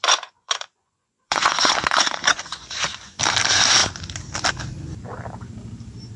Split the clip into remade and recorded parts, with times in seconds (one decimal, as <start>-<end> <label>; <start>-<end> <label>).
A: 0.0-3.2 remade; 3.2-6.2 recorded